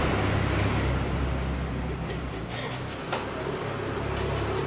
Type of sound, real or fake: real